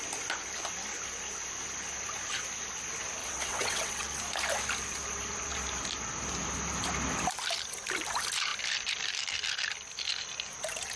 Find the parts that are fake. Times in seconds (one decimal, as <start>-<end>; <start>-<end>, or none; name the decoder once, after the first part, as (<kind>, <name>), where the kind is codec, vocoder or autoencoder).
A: 3.2-4.2 (vocoder, WaveNeXt)